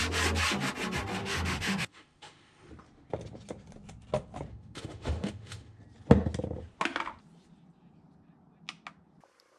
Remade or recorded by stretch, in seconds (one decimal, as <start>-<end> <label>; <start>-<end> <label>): 0.0-1.2 recorded; 1.2-2.7 remade; 2.7-4.5 recorded; 4.5-5.8 remade; 5.8-9.6 recorded

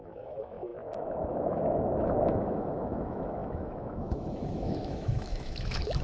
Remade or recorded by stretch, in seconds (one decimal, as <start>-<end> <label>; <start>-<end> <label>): 0.0-6.0 remade